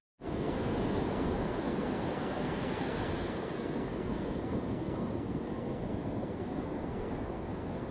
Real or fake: fake